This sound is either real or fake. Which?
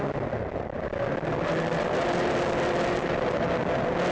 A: real